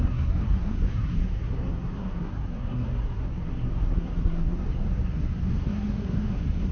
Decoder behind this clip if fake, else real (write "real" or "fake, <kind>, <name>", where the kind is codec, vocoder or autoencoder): fake, codec, SNAC